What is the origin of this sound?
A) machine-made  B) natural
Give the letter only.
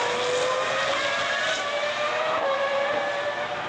B